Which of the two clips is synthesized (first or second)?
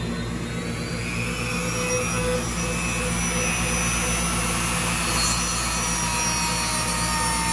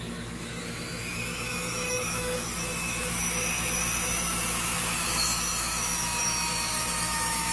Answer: second